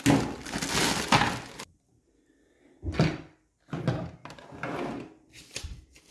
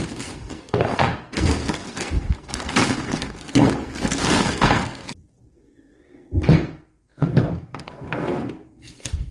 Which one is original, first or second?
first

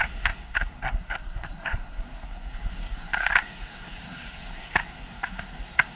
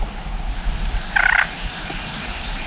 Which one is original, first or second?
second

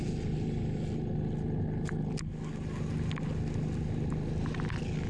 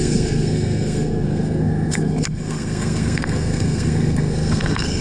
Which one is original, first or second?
first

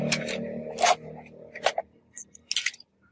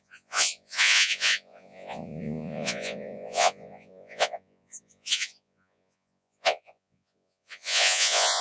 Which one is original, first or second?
first